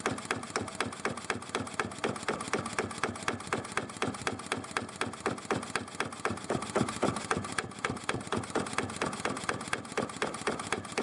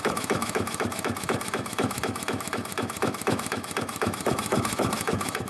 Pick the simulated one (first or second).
second